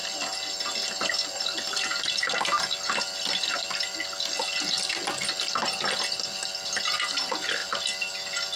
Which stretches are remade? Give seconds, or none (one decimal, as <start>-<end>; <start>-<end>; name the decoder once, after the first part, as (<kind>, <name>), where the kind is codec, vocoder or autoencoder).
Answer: none